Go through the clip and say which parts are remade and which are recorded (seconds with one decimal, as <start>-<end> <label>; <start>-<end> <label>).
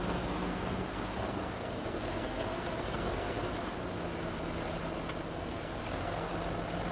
0.0-3.5 remade; 3.5-5.3 recorded; 5.3-6.3 remade; 6.3-6.9 recorded